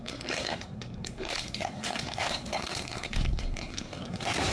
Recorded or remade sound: remade